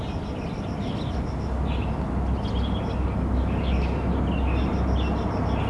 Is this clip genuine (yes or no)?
yes